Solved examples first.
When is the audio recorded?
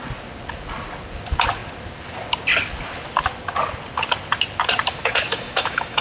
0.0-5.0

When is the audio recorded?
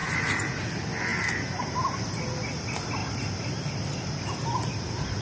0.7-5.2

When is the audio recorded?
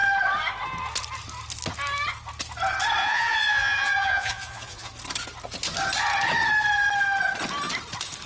0.0-3.0; 4.9-8.3